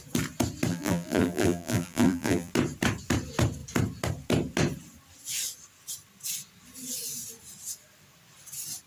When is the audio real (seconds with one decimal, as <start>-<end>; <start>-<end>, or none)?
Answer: 0.0-0.7; 2.5-8.9